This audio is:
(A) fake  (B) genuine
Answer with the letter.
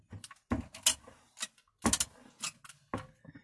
B